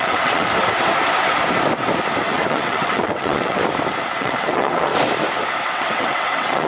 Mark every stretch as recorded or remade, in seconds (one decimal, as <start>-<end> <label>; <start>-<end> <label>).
0.0-0.5 remade; 0.5-2.2 recorded; 2.2-3.6 remade; 3.6-4.2 recorded; 4.2-4.9 remade; 4.9-5.7 recorded; 5.7-6.7 remade